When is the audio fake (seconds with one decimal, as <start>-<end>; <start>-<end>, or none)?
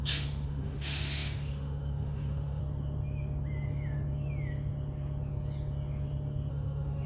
0.0-2.6; 6.5-7.1